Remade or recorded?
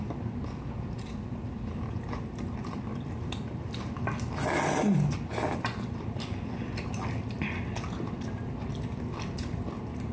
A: recorded